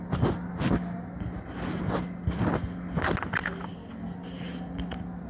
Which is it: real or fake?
real